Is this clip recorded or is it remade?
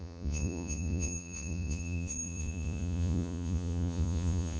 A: remade